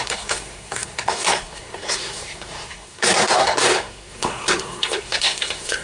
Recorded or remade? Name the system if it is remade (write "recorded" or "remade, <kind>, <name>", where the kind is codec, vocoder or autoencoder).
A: remade, codec, SNAC